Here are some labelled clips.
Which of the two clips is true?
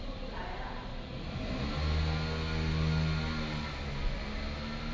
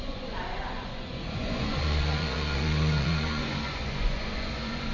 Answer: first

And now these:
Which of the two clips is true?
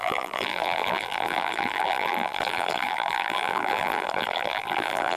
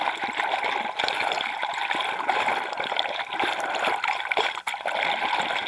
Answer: second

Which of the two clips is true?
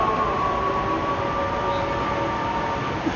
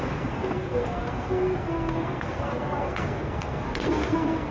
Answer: first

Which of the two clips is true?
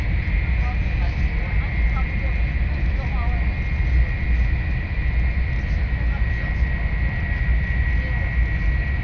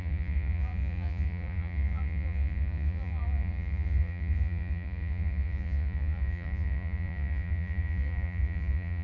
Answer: first